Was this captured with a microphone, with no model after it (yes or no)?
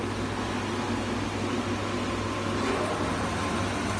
yes